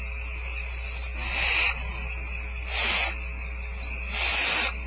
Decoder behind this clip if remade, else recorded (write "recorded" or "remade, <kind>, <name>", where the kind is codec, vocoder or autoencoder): recorded